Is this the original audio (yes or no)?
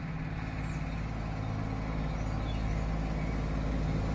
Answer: yes